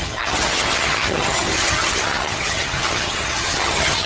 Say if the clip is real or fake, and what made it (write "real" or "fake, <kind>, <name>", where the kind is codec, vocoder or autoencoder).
fake, vocoder, HiFi-GAN